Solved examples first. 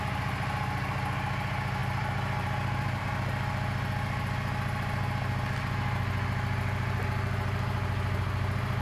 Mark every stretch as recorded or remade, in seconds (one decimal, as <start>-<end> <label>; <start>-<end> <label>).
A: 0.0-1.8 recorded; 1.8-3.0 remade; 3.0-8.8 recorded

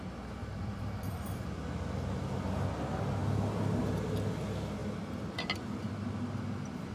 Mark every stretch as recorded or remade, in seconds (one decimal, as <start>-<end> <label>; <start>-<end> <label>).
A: 0.0-0.4 recorded; 0.4-1.5 remade; 1.5-6.9 recorded

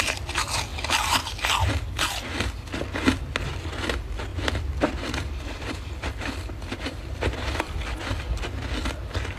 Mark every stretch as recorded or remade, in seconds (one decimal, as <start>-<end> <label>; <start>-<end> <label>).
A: 0.0-4.3 recorded; 4.3-8.0 remade; 8.0-9.4 recorded

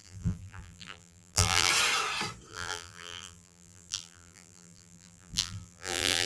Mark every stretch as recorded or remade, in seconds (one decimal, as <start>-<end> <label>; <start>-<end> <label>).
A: 0.0-1.7 remade; 1.7-2.5 recorded; 2.5-6.3 remade

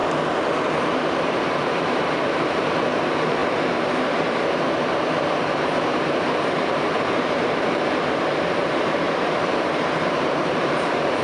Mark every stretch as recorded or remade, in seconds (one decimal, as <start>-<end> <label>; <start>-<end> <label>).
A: 0.0-0.9 recorded; 0.9-11.2 remade

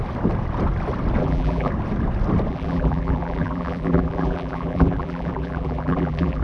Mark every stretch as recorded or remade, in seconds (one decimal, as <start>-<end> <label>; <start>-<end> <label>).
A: 0.0-1.2 recorded; 1.2-1.7 remade; 1.7-2.5 recorded; 2.5-6.4 remade